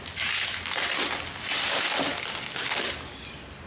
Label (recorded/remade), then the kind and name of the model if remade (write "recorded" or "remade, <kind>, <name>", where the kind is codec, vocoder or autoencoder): recorded